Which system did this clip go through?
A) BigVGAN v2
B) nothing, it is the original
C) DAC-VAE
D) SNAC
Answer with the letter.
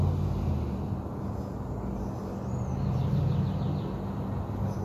B